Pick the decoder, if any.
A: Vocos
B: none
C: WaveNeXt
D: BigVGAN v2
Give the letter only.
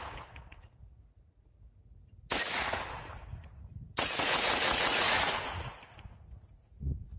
A